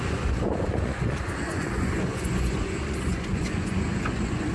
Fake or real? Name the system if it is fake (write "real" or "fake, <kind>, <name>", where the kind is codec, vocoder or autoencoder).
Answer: fake, vocoder, Vocos